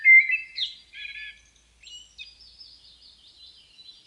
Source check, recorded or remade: recorded